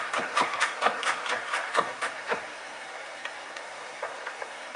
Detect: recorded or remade remade